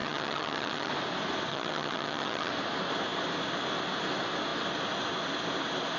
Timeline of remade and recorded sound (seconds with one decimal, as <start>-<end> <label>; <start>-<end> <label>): 0.0-0.9 remade; 0.9-1.5 recorded; 1.5-2.5 remade; 2.5-6.0 recorded